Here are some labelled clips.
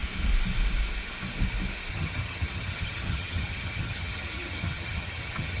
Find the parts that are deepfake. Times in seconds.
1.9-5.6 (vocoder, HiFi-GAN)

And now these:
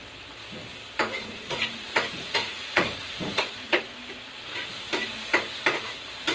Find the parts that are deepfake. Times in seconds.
1.3-3.8 (vocoder, Vocos)

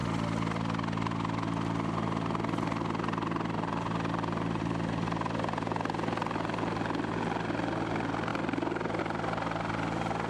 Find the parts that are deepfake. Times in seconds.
8.3-9.0 (vocoder, BigVGAN v2)

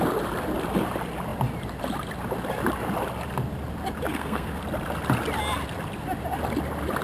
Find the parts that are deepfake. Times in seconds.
4.1-4.6 (codec, SNAC)